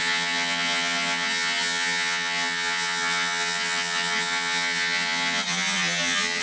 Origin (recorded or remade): remade